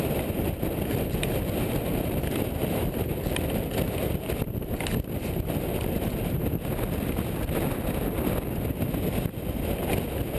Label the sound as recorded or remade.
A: recorded